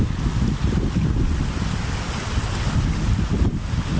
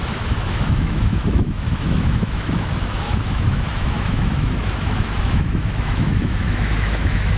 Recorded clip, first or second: first